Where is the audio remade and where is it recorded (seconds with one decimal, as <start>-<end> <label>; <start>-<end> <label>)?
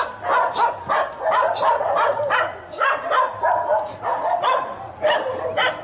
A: 0.0-5.8 recorded